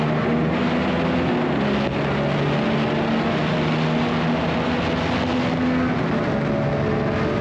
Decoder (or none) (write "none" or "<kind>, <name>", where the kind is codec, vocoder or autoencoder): none